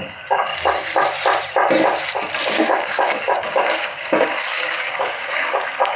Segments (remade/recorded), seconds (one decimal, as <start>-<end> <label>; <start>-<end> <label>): 0.0-0.5 remade; 0.5-2.5 recorded; 2.5-6.0 remade